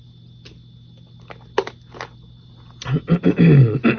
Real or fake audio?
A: real